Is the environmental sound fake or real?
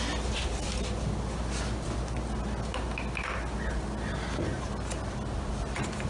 real